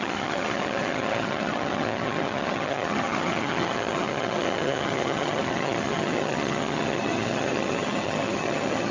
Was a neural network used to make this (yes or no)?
yes